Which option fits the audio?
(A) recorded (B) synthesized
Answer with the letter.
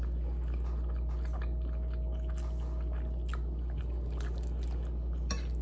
A